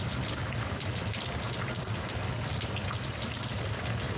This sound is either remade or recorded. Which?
recorded